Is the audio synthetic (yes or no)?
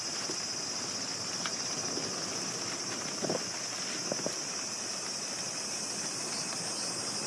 no